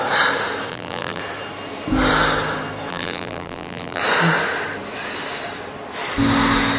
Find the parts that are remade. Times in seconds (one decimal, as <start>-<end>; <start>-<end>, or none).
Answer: 0.7-1.2; 2.9-4.0